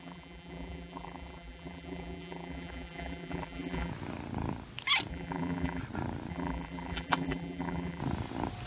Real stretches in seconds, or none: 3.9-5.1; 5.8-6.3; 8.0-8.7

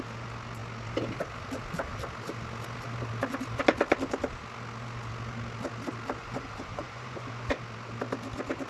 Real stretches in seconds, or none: 0.0-6.2; 7.6-8.7

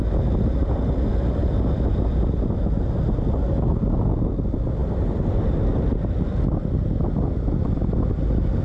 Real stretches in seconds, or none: 0.0-4.8; 5.4-8.6

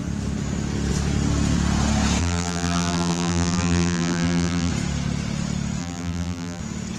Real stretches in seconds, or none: 0.0-2.2; 4.7-5.8; 6.6-7.0

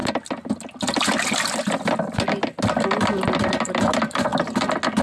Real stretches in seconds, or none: 0.0-5.0

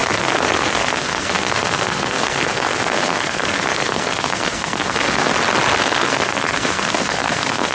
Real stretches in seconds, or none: 5.3-5.8

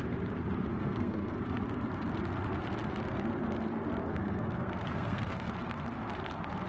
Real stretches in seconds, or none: 0.0-0.7; 1.6-4.0; 5.5-6.7